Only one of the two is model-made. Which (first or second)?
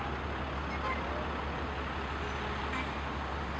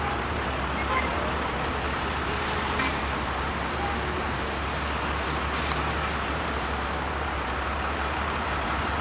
second